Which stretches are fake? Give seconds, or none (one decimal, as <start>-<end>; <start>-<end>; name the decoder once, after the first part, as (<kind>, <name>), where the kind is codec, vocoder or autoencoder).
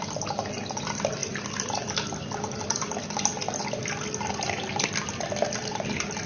none